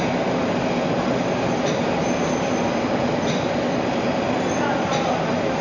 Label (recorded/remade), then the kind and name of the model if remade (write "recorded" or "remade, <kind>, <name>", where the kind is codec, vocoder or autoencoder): recorded